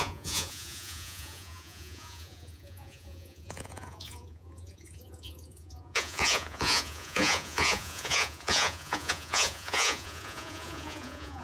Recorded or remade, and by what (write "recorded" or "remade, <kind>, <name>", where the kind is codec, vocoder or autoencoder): remade, vocoder, Vocos